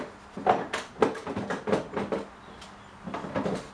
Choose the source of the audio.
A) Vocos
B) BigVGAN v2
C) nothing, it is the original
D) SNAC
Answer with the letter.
C